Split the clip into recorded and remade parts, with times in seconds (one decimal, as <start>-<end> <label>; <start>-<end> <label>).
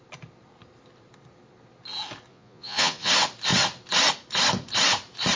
0.0-2.3 recorded; 2.3-3.1 remade; 3.1-5.4 recorded